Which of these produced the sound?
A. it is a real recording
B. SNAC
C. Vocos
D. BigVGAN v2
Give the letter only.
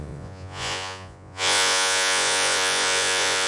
C